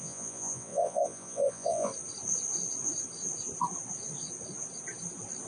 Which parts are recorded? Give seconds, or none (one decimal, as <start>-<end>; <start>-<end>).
1.9-5.5